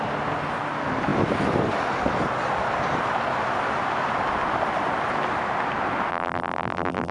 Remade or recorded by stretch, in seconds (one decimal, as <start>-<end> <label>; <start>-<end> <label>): 0.0-6.1 recorded; 6.1-7.1 remade